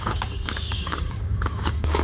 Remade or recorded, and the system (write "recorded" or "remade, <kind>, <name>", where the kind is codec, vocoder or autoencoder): remade, codec, DAC